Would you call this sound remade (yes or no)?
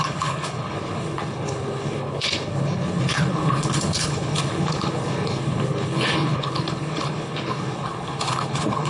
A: yes